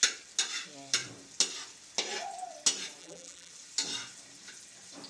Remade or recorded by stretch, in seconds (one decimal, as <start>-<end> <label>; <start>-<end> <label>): 0.0-3.0 recorded; 3.0-3.5 remade; 3.5-5.1 recorded